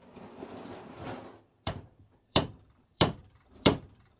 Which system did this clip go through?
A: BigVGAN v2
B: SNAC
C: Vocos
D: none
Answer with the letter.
A